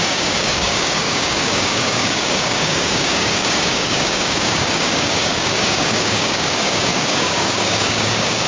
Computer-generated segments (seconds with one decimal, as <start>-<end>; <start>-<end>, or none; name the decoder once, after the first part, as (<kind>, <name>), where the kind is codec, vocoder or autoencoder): 0.0-8.5 (codec, DAC)